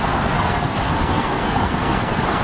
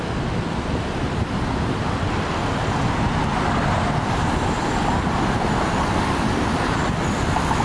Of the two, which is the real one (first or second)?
second